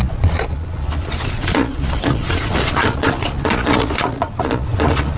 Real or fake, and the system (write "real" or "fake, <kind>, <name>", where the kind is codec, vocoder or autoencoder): fake, vocoder, Vocos